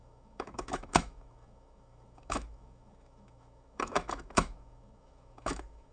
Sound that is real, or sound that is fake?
fake